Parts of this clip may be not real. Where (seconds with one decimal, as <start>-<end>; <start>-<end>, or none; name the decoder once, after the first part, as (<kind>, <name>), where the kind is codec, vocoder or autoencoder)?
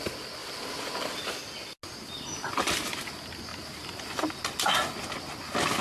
3.5-4.3 (vocoder, BigVGAN v2)